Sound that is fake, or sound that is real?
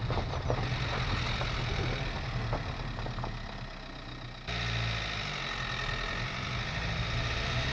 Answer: real